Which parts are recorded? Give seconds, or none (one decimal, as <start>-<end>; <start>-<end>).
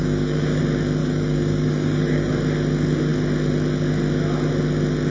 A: 0.6-1.0; 2.3-5.1